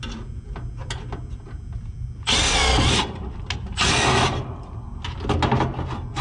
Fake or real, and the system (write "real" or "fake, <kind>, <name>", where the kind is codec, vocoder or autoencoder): real